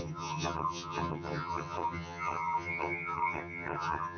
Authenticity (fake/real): fake